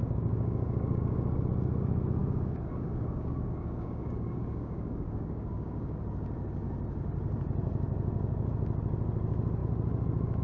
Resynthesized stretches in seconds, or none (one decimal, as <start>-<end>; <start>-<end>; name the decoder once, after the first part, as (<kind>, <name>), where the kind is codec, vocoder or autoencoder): 0.0-1.4 (codec, DAC); 2.2-6.0